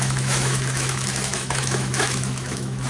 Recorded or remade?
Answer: remade